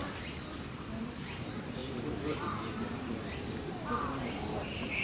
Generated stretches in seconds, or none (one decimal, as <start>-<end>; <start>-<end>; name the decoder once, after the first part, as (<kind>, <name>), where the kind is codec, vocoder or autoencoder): 0.5-5.0 (vocoder, BigVGAN v2)